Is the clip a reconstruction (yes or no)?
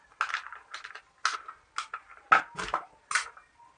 no